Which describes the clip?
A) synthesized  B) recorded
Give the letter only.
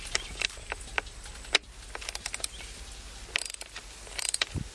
B